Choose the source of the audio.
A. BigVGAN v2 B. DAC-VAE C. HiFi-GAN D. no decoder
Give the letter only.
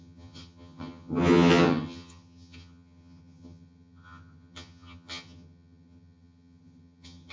C